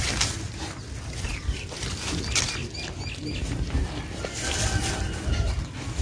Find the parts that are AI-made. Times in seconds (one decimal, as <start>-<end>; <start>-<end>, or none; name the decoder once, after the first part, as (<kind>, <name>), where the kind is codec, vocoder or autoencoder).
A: none